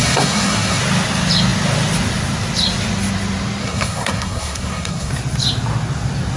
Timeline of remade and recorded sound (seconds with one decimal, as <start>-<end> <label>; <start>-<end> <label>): 0.0-0.8 remade; 0.8-3.6 recorded; 3.6-5.1 remade; 5.1-6.4 recorded